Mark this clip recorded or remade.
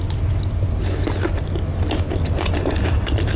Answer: recorded